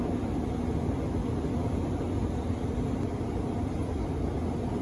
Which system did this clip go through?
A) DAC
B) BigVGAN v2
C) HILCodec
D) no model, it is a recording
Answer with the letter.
B